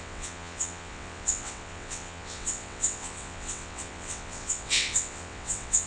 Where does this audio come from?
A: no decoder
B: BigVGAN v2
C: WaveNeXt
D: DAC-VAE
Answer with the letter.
C